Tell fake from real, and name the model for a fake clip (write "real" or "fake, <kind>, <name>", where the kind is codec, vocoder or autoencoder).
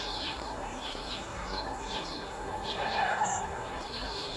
fake, codec, SNAC